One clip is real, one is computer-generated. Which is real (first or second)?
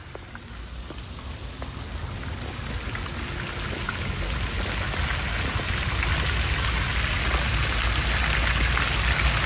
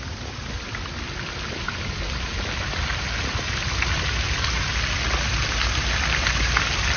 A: first